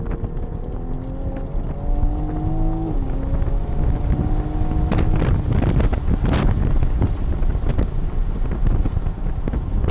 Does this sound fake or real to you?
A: real